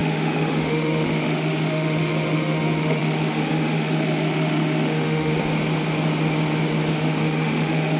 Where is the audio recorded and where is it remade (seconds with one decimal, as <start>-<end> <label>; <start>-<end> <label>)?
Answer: 0.0-5.3 remade; 5.3-6.9 recorded; 6.9-8.0 remade